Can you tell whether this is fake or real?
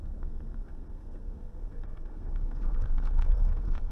fake